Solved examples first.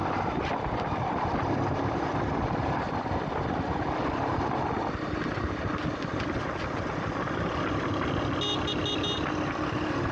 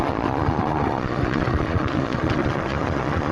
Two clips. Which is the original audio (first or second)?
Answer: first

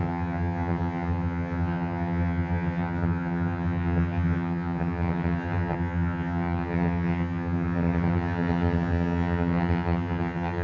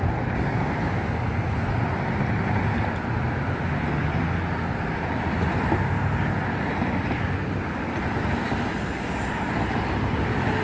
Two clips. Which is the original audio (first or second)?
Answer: second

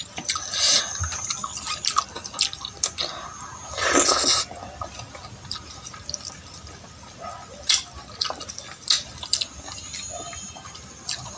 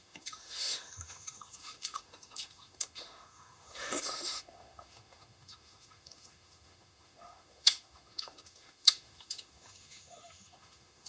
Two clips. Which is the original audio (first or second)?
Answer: first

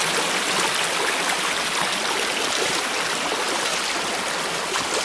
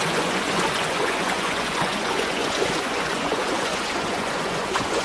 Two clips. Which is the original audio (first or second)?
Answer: first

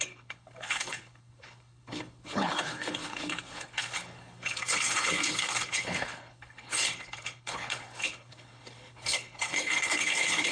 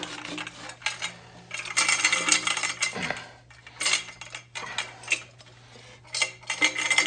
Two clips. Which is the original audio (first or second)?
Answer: second